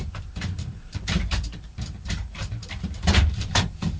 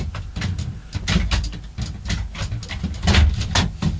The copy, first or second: first